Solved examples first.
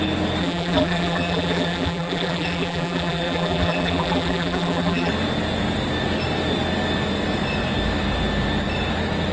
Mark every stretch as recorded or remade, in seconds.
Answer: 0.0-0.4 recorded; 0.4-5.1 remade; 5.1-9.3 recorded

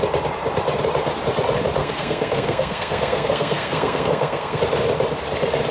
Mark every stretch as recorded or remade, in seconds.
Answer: 0.0-1.8 recorded; 1.8-4.6 remade; 4.6-5.7 recorded

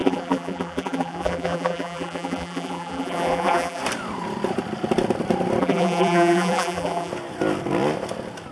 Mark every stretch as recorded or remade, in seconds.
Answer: 0.0-3.8 remade; 3.8-5.6 recorded; 5.6-7.1 remade; 7.1-8.5 recorded

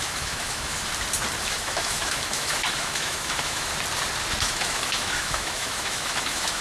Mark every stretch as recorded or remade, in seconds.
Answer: 0.0-0.9 remade; 0.9-1.4 recorded; 1.4-3.7 remade; 3.7-4.4 recorded; 4.4-6.6 remade

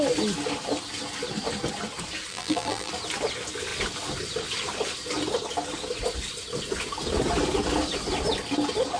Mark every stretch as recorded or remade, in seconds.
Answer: 0.0-2.3 recorded; 2.3-2.9 remade; 2.9-9.0 recorded

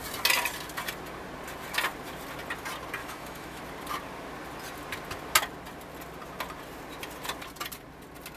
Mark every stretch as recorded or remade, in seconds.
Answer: 0.0-3.0 recorded; 3.0-3.6 remade; 3.6-8.4 recorded

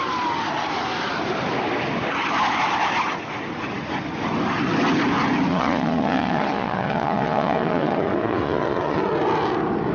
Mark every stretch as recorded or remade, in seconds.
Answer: 0.0-5.5 recorded; 5.5-9.1 remade; 9.1-9.9 recorded

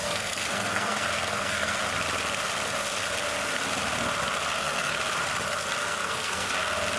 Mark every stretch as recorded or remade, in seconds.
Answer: 0.0-1.8 remade; 1.8-4.5 recorded; 4.5-5.0 remade; 5.0-5.8 recorded; 5.8-6.5 remade; 6.5-7.0 recorded